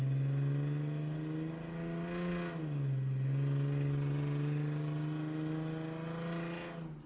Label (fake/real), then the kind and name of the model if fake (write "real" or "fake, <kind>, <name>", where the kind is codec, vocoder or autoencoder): real